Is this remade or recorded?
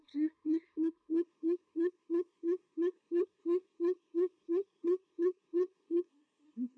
remade